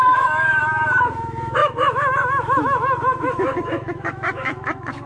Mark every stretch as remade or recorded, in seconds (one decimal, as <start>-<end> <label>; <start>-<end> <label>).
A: 0.0-5.1 remade

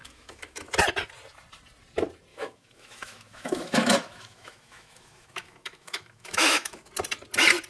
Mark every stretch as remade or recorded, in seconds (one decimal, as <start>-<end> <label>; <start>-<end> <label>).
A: 0.0-0.7 remade; 0.7-2.3 recorded; 2.3-6.9 remade; 6.9-7.7 recorded

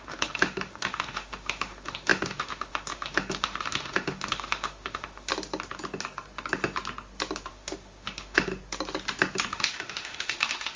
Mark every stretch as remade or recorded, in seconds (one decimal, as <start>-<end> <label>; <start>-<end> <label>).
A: 0.0-5.3 remade; 5.3-7.5 recorded; 7.5-8.5 remade; 8.5-9.5 recorded; 9.5-10.8 remade

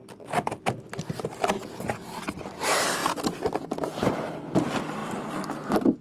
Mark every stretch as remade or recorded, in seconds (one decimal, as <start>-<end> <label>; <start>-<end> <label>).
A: 0.0-6.0 recorded

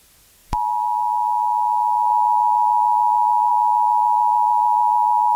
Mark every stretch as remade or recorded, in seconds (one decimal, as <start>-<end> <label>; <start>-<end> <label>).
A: 0.0-5.4 recorded

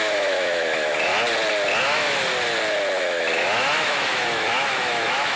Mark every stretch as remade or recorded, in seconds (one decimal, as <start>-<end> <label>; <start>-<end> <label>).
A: 0.0-1.1 remade; 1.1-1.8 recorded; 1.8-2.3 remade; 2.3-3.0 recorded; 3.0-5.4 remade